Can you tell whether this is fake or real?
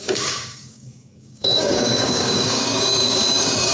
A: fake